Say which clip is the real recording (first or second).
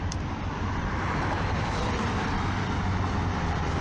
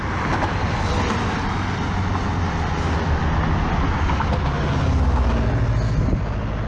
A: second